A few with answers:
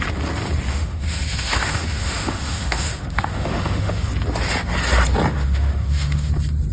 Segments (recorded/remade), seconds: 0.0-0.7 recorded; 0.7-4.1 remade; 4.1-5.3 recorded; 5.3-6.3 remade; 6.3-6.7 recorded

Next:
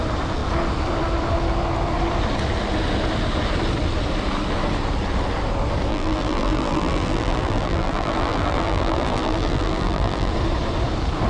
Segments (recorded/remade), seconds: 0.0-5.9 recorded; 5.9-10.3 remade; 10.3-11.3 recorded